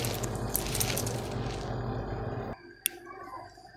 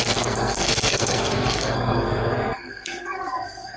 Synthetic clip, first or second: second